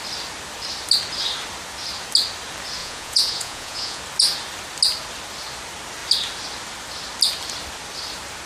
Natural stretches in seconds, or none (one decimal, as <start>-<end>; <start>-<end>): 0.0-2.8; 4.0-8.5